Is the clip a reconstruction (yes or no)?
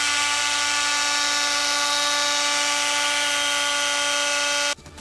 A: no